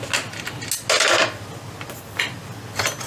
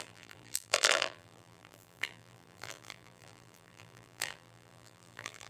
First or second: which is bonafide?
first